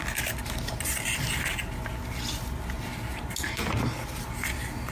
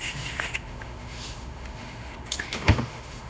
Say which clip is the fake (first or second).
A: second